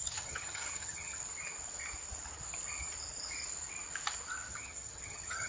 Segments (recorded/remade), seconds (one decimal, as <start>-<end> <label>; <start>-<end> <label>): 0.0-1.2 remade; 1.2-4.5 recorded; 4.5-5.5 remade